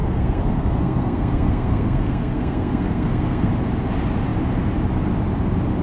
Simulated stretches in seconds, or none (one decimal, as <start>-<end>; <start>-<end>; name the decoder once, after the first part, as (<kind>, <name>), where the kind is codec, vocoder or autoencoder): 0.0-3.5 (codec, SNAC)